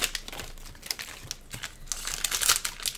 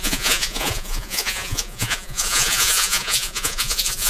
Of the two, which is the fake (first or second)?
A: second